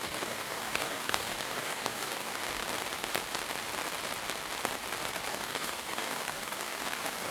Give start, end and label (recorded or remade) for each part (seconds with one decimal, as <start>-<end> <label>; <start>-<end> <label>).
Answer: 0.0-2.6 remade; 2.6-5.3 recorded; 5.3-7.3 remade